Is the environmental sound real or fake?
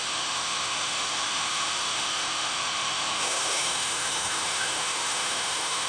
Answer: fake